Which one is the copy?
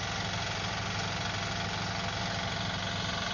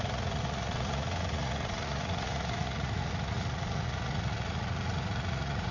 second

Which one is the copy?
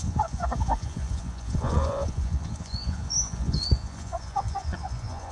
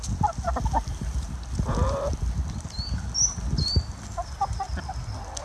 first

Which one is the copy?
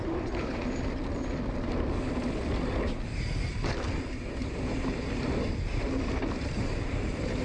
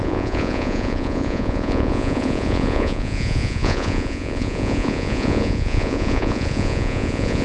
second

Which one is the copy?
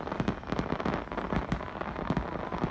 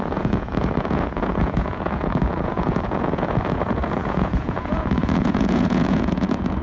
second